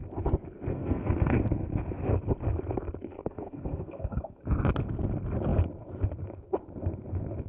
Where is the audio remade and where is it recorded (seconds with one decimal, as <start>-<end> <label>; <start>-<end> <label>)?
0.0-0.7 recorded; 0.7-1.4 remade; 1.4-3.1 recorded; 3.1-4.4 remade; 4.4-7.5 recorded